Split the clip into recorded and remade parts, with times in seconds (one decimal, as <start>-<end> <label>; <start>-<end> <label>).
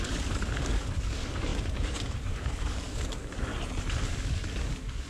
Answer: 0.0-3.5 remade; 3.5-4.1 recorded; 4.1-5.1 remade